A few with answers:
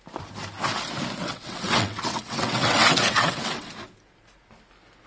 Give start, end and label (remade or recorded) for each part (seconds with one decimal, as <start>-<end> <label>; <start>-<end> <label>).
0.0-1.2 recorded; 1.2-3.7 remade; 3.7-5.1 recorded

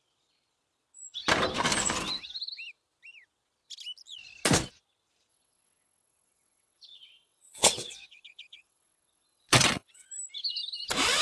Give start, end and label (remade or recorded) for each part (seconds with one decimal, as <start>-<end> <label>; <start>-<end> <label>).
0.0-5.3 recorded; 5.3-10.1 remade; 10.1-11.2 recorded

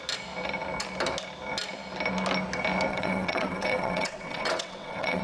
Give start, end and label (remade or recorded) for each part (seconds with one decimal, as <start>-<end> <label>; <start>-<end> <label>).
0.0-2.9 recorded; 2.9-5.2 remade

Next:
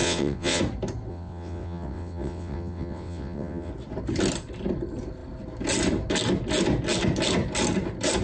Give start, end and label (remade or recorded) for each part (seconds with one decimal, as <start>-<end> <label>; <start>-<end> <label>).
0.0-0.6 remade; 0.6-1.1 recorded; 1.1-3.7 remade; 3.7-8.2 recorded

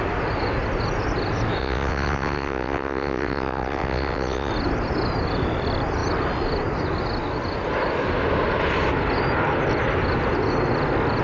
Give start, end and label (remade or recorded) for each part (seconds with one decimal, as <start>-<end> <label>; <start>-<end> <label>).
0.0-1.6 recorded; 1.6-4.5 remade; 4.5-11.2 recorded